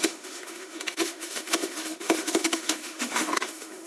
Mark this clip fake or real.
fake